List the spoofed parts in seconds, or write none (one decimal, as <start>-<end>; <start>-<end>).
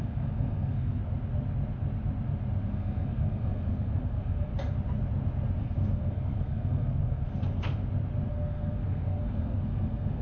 0.0-1.0; 2.7-4.5; 5.6-7.8; 8.3-10.2